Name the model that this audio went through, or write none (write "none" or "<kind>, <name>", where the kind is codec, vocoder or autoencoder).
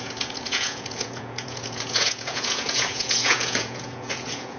vocoder, Vocos